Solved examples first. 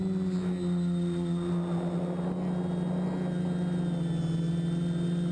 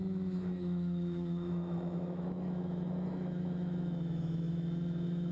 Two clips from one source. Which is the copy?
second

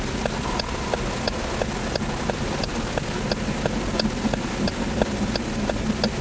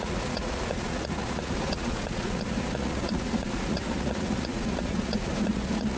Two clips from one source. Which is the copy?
second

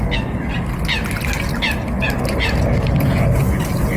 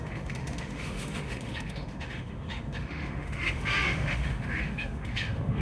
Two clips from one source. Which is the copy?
second